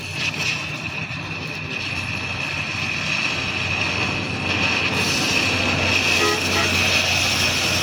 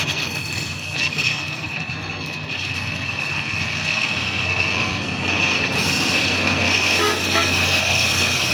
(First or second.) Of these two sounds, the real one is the first